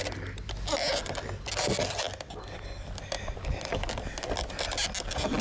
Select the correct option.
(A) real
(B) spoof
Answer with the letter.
A